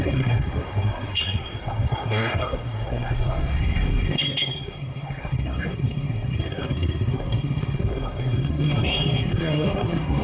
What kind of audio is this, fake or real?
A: fake